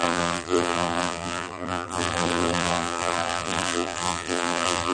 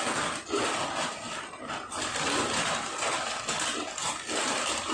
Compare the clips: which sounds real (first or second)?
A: second